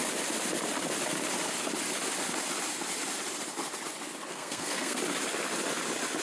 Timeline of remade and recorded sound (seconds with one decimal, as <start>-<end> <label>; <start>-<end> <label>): 0.0-4.3 recorded; 4.3-5.0 remade; 5.0-6.2 recorded